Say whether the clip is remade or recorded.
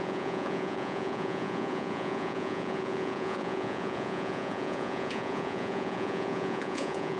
remade